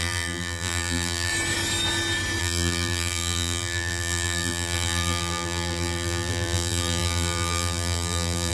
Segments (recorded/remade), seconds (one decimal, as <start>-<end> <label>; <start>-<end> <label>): 0.0-1.3 remade; 1.3-2.4 recorded; 2.4-8.5 remade